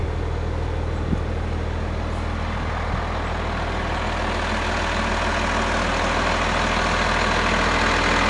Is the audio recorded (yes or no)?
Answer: yes